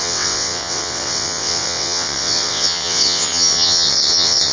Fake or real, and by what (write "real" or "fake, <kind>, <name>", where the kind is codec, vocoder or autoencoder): fake, vocoder, WaveNeXt